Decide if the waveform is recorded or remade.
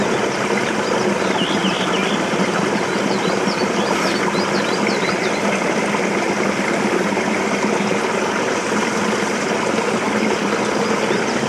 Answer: recorded